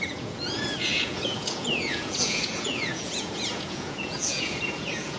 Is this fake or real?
fake